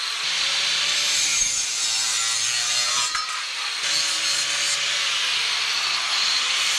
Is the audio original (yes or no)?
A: yes